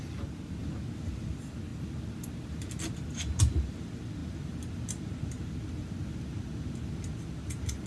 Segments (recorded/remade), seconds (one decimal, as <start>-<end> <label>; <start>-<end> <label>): 0.0-7.9 recorded